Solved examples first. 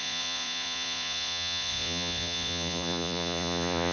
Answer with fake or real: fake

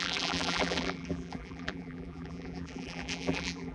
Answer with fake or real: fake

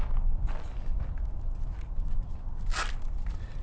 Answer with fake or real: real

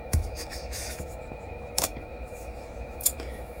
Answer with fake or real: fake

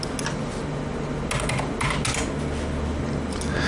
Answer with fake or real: real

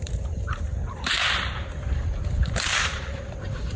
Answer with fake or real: fake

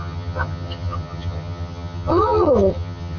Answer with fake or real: fake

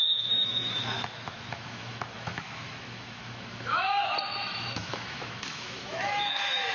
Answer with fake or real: fake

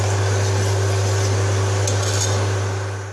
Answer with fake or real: real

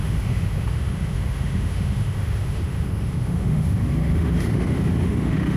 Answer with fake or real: fake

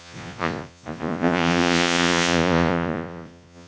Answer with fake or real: fake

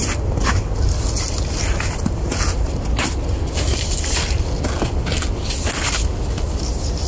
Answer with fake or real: real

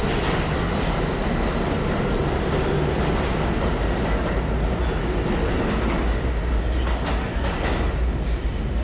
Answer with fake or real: real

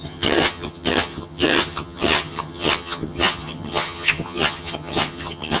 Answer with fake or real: fake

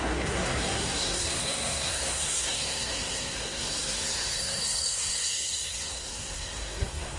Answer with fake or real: fake